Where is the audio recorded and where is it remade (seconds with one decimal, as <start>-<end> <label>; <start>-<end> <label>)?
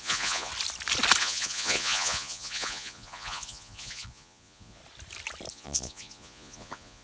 0.0-0.5 remade; 0.5-1.2 recorded; 1.2-4.8 remade; 4.8-5.5 recorded; 5.5-7.0 remade